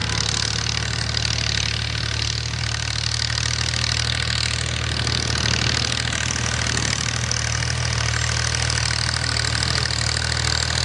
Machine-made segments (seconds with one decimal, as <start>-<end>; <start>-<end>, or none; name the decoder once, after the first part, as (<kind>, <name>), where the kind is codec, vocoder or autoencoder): none